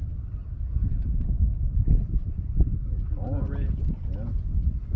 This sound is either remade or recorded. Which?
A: recorded